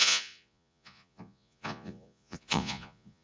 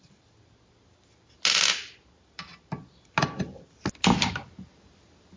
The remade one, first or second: first